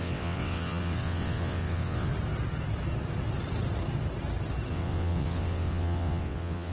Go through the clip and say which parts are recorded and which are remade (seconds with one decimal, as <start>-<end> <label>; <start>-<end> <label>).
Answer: 0.0-2.1 remade; 2.1-4.7 recorded; 4.7-6.7 remade